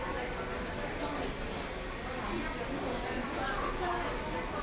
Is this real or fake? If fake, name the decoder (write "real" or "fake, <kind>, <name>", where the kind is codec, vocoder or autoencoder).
real